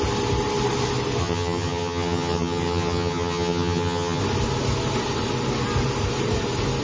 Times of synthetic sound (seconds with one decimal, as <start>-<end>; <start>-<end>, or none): 1.2-4.2